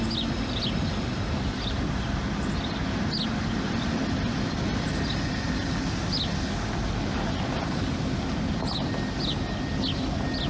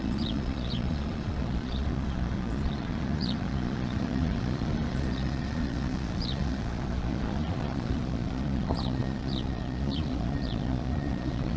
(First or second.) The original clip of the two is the first